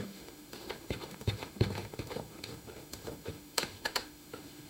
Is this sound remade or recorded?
remade